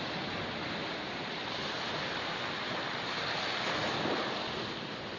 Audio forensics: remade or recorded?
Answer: recorded